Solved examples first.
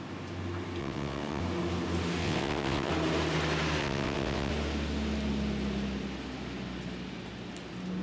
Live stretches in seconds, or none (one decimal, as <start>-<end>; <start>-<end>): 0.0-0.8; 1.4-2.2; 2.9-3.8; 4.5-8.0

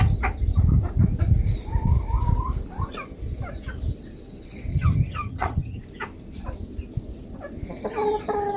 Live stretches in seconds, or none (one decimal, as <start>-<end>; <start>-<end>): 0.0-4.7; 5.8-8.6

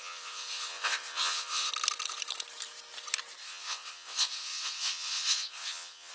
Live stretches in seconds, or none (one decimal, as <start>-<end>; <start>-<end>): 1.7-3.4